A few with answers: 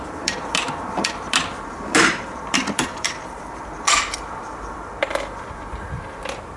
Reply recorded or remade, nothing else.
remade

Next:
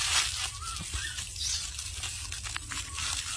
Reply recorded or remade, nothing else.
recorded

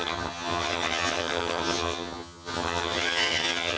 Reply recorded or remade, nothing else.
remade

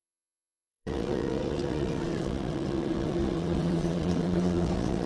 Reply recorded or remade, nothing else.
remade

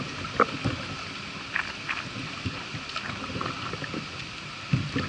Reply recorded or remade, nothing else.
recorded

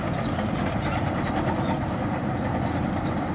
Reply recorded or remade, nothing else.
recorded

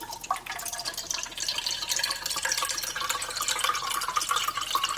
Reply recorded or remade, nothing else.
recorded